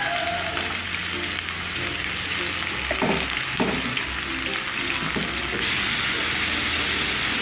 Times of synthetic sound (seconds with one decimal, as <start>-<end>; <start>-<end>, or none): none